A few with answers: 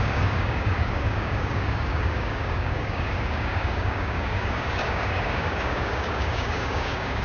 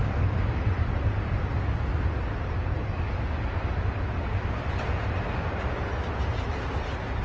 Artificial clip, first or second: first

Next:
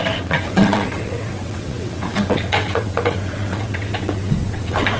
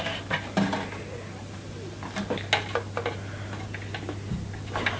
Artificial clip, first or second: first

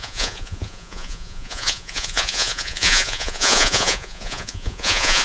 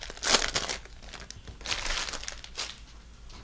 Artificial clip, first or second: first